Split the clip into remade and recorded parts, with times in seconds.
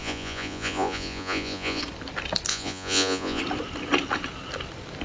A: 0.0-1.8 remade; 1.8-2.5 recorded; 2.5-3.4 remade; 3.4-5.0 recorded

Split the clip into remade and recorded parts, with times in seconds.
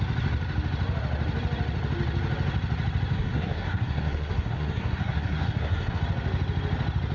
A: 0.0-3.1 recorded; 3.1-6.0 remade; 6.0-7.1 recorded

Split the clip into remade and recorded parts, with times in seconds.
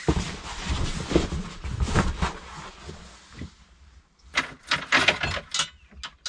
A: 0.0-6.3 recorded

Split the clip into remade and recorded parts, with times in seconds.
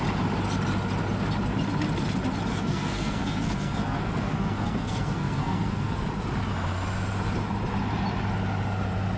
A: 0.0-2.5 recorded; 2.5-6.0 remade; 6.0-9.2 recorded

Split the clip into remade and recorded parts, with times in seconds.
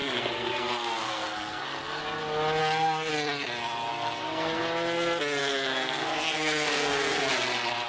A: 0.0-2.0 remade; 2.0-2.6 recorded; 2.6-3.1 remade; 3.1-3.9 recorded; 3.9-4.6 remade; 4.6-5.4 recorded; 5.4-7.2 remade; 7.2-7.9 recorded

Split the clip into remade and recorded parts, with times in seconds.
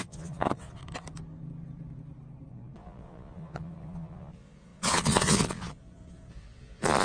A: 0.0-0.8 remade; 0.8-2.5 recorded; 2.5-7.0 remade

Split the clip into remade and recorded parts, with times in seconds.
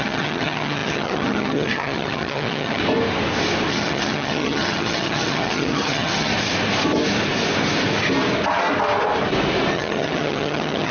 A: 0.0-2.8 remade; 2.8-3.7 recorded; 3.7-6.3 remade; 6.3-9.7 recorded; 9.7-10.9 remade